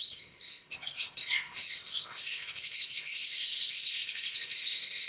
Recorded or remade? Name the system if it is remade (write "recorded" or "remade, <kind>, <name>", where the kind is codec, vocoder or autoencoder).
remade, codec, ZipCodec